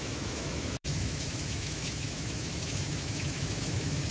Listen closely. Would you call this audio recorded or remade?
remade